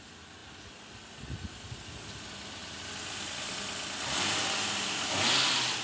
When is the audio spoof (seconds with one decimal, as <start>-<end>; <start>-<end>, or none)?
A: none